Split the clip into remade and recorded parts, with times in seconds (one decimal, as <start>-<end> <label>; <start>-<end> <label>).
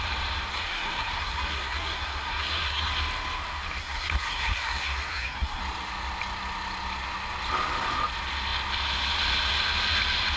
0.0-0.5 recorded; 0.5-2.9 remade; 2.9-3.8 recorded; 3.8-5.6 remade; 5.6-10.4 recorded